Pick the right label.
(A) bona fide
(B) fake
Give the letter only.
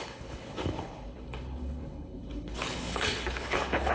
B